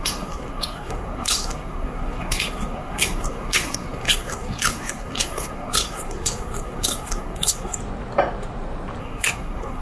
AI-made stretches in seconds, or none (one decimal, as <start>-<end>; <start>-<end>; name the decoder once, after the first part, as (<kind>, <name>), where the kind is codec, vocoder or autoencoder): 0.0-7.8 (codec, SNAC); 9.0-9.8